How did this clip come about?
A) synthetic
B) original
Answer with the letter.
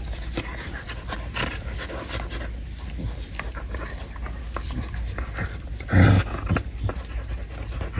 B